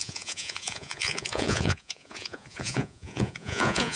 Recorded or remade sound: remade